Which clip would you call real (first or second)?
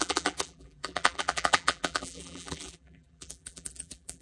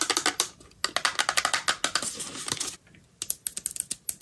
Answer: second